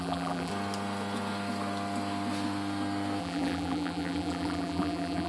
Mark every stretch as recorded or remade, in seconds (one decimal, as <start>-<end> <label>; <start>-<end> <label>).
0.0-0.5 remade; 0.5-3.2 recorded; 3.2-5.3 remade